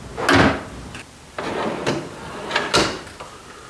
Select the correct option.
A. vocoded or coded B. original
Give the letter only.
B